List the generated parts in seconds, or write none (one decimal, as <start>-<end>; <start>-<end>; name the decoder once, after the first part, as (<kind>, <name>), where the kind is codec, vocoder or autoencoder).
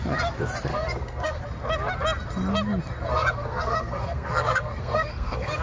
0.7-1.4 (codec, SNAC); 3.1-5.6